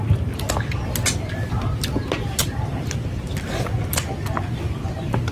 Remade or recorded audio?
recorded